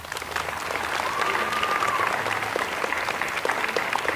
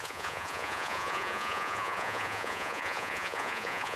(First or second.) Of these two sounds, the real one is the first